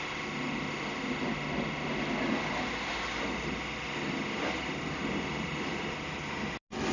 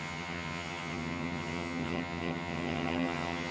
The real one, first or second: first